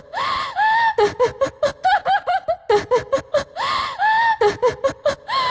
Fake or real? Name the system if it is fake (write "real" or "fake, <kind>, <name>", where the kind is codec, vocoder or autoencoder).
real